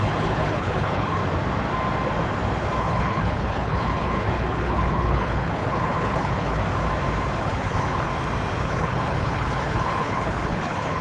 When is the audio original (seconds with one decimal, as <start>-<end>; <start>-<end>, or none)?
1.2-2.8; 6.6-7.4; 8.1-8.6